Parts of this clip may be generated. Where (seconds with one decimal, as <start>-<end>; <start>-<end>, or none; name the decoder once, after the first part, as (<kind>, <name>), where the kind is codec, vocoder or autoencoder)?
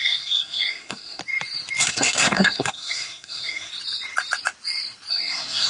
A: 0.0-1.2 (codec, SNAC); 1.8-3.7; 5.1-5.7